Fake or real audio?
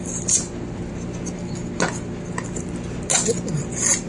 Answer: real